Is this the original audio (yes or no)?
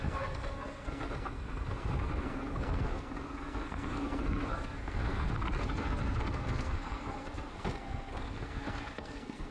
no